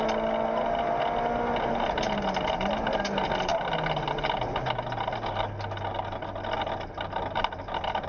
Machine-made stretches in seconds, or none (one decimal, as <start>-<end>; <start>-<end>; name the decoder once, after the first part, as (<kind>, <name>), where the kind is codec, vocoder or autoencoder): none